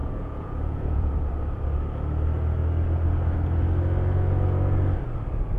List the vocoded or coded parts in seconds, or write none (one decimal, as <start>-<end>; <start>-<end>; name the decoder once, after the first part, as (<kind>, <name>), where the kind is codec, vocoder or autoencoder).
0.0-1.1 (vocoder, Vocos)